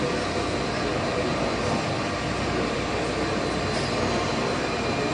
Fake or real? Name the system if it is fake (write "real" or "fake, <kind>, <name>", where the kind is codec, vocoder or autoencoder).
real